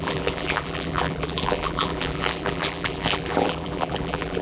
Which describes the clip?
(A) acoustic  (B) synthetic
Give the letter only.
B